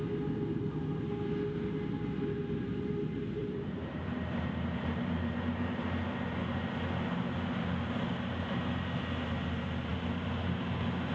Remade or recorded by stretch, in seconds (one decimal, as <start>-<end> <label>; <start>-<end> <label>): 0.0-3.4 recorded; 3.4-5.8 remade; 5.8-11.1 recorded